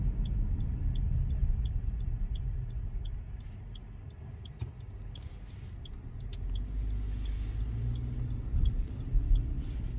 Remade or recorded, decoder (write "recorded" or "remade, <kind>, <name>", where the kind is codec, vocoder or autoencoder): recorded